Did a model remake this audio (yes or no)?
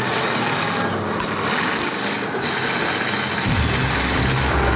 no